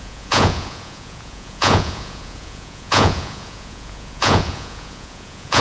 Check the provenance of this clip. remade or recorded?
remade